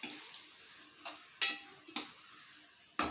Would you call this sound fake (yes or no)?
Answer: no